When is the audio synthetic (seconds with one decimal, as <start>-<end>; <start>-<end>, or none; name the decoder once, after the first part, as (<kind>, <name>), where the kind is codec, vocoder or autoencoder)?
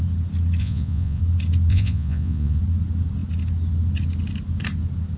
0.6-1.2 (vocoder, Vocos); 1.7-2.6